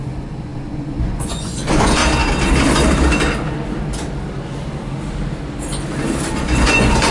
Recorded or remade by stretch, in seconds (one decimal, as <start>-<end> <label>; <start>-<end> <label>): 0.0-2.0 remade; 2.0-6.3 recorded; 6.3-7.1 remade